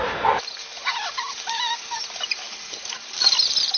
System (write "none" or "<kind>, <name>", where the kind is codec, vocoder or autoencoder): none